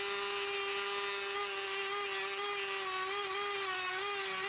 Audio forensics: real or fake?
real